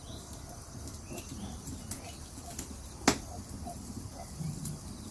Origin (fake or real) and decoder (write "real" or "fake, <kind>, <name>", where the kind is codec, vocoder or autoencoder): real